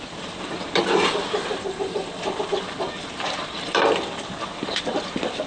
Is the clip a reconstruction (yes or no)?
yes